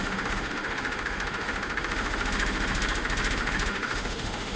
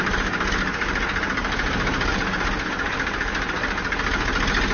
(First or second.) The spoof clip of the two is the first